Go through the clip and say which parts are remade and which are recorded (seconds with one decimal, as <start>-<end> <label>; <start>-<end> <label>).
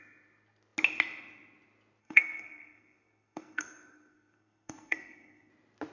0.0-2.0 recorded; 2.0-5.5 remade; 5.5-5.9 recorded